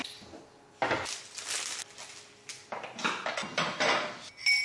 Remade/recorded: recorded